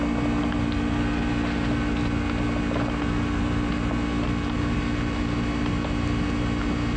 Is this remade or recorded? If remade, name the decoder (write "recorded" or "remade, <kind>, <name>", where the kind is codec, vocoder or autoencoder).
recorded